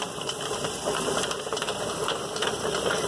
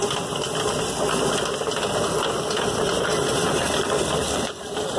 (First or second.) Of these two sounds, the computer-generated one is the first